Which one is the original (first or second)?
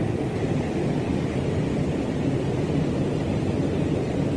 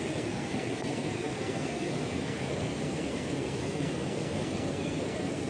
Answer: first